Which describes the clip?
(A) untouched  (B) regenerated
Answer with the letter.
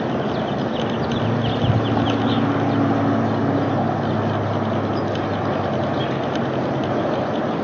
A